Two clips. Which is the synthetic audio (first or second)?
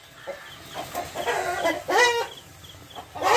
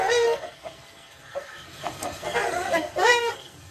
second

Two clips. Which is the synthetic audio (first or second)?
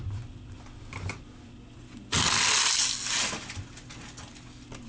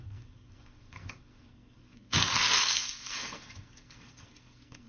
second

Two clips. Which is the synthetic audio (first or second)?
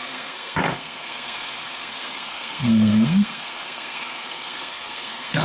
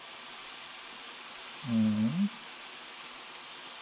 first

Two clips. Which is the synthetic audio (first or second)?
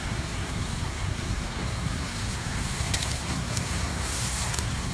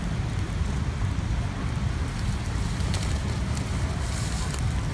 first